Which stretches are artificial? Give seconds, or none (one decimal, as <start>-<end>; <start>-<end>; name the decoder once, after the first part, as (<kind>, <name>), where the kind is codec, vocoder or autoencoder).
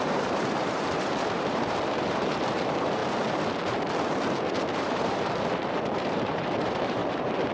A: 0.0-3.0 (vocoder, BigVGAN v2); 4.6-7.5